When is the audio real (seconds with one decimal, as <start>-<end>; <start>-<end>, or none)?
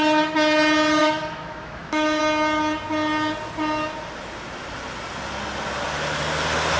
0.0-1.0; 2.2-6.8